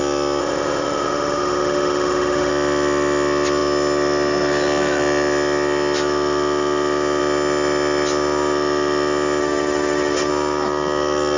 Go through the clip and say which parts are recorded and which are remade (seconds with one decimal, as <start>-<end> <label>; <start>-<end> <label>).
0.0-0.4 recorded; 0.4-2.5 remade; 2.5-9.4 recorded; 9.4-10.3 remade; 10.3-11.4 recorded